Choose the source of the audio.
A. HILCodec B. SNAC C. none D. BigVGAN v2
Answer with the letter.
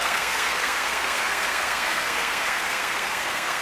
B